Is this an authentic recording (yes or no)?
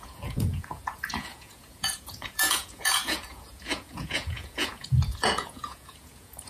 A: no